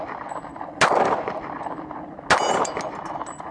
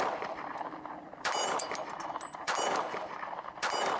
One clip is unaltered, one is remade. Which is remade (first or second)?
second